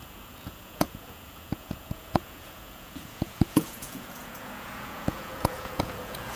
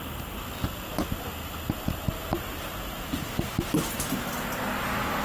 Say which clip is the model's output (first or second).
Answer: first